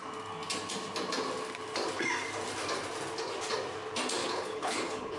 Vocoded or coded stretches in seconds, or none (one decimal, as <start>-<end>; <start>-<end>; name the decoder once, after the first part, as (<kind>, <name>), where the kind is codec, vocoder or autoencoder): 4.2-5.2 (codec, HILCodec)